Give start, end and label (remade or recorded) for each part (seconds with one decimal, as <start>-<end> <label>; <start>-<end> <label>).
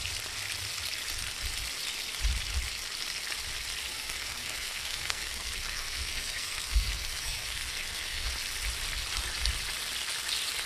0.0-3.9 recorded; 3.9-8.3 remade; 8.3-10.7 recorded